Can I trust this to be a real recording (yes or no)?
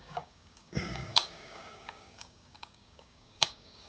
no